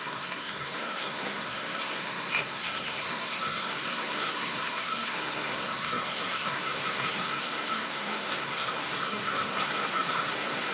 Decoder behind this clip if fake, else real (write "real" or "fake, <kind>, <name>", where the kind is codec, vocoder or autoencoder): fake, codec, SNAC